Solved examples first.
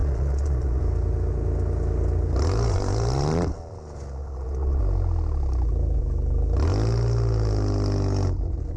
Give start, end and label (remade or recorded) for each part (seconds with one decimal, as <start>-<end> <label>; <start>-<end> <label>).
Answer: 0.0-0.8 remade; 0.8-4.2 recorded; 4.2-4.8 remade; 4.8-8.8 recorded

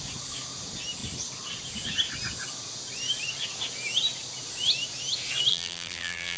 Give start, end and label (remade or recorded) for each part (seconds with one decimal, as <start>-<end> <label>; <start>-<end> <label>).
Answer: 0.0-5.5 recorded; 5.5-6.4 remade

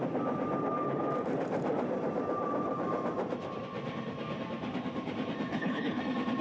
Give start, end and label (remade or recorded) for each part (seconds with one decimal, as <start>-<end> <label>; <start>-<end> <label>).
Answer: 0.0-5.5 recorded; 5.5-6.0 remade; 6.0-6.4 recorded

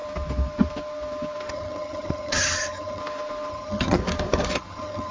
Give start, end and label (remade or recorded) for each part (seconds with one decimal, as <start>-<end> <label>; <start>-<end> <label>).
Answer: 0.0-1.5 recorded; 1.5-3.0 remade; 3.0-3.5 recorded; 3.5-4.0 remade; 4.0-4.6 recorded; 4.6-5.1 remade